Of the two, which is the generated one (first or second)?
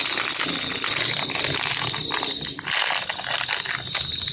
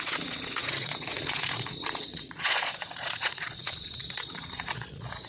second